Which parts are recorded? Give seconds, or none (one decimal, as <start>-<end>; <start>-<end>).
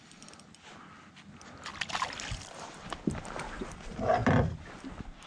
0.0-4.2; 4.8-5.3